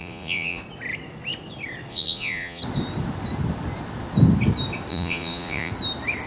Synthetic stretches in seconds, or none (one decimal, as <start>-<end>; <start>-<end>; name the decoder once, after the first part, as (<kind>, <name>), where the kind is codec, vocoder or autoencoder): 0.0-0.6 (vocoder, Vocos); 1.9-2.6; 4.9-5.7